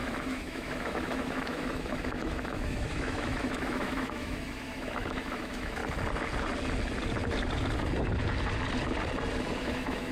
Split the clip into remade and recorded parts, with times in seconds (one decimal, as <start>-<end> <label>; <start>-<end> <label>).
0.0-5.8 remade; 5.8-9.6 recorded; 9.6-10.1 remade